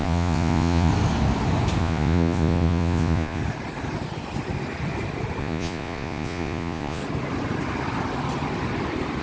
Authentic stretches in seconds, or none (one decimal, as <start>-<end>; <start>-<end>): 0.9-1.8; 3.4-5.4; 7.0-9.2